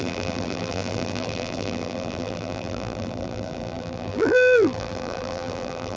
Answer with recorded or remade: remade